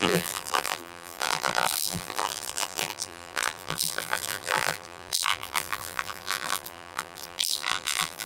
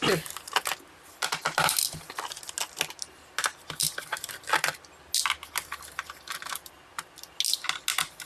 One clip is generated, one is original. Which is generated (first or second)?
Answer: first